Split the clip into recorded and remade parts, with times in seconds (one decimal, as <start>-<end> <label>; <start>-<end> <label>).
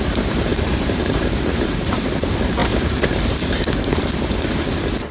0.0-0.5 recorded; 0.5-2.1 remade; 2.1-2.6 recorded; 2.6-4.3 remade; 4.3-5.1 recorded